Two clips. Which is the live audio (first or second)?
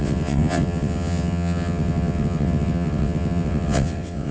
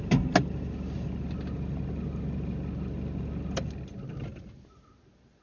second